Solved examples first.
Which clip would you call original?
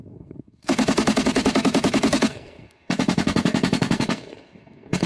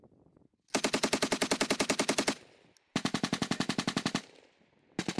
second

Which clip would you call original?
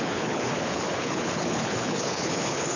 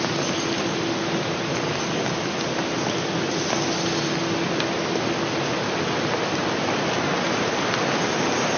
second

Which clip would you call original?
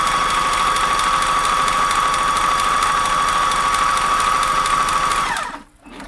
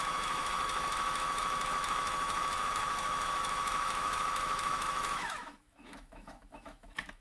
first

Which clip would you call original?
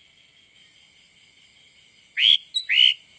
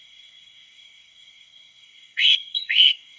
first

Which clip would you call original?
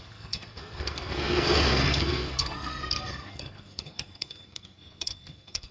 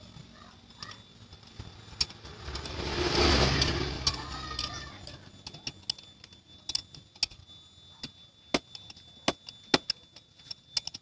second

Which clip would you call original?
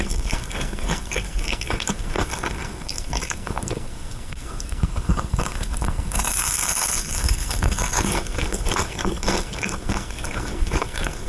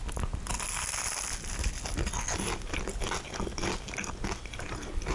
second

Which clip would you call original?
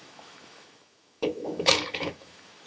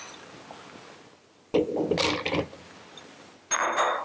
second